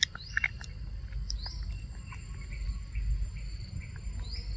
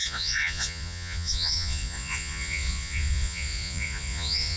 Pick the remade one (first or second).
second